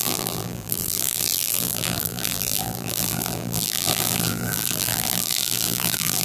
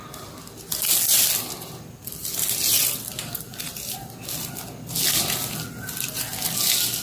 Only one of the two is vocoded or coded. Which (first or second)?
first